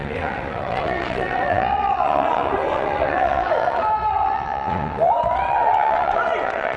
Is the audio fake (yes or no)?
yes